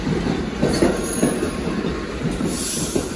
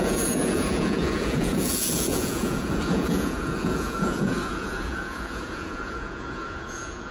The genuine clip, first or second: first